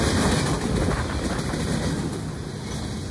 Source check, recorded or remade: recorded